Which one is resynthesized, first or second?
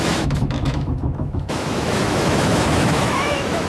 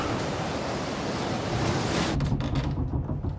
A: first